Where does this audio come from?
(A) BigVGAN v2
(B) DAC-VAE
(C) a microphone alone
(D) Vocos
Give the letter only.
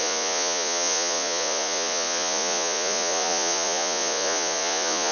D